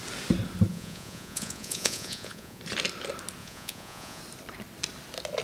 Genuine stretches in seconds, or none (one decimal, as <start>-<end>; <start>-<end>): 0.0-0.7; 2.6-3.4; 4.2-5.4